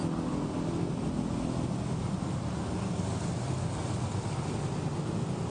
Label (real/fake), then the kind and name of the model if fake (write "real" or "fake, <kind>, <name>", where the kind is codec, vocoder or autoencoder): real